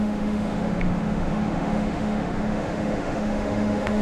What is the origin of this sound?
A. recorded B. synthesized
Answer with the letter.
B